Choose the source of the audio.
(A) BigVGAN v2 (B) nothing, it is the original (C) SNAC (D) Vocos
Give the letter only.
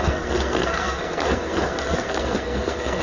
C